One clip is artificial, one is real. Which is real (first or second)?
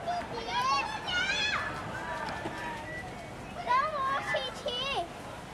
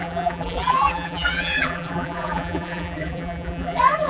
first